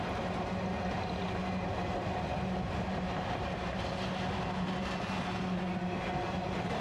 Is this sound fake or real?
real